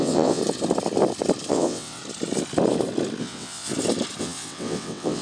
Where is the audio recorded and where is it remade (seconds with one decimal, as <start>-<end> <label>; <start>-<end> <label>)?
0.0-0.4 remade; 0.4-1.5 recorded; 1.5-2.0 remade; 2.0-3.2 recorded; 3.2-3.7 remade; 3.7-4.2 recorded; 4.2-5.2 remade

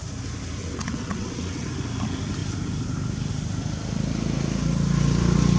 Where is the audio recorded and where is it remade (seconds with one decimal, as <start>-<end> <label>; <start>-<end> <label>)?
0.0-0.6 recorded; 0.6-1.7 remade; 1.7-5.6 recorded

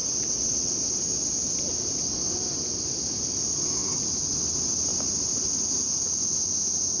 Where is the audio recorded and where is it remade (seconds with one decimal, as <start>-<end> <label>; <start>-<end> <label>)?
0.0-0.8 remade; 0.8-7.0 recorded

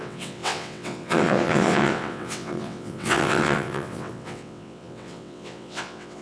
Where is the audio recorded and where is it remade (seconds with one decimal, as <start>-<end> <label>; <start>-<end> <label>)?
0.0-6.2 remade

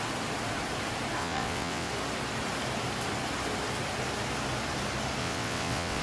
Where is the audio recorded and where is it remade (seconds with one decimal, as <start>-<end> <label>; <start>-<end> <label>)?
0.0-1.2 recorded; 1.2-1.9 remade; 1.9-5.2 recorded; 5.2-6.0 remade

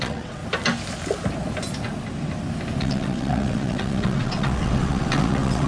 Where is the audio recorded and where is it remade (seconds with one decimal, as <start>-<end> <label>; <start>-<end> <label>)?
0.0-0.4 remade; 0.4-2.8 recorded; 2.8-5.7 remade